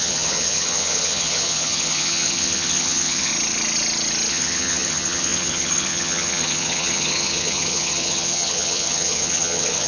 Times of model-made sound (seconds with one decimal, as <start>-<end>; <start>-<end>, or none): 0.0-3.3; 4.3-9.9